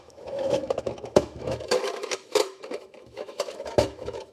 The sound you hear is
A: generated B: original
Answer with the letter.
A